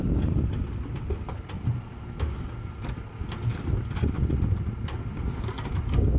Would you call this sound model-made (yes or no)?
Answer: no